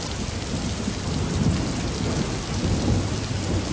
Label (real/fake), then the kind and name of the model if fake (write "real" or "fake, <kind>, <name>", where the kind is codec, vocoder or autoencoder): real